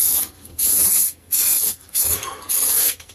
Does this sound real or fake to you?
fake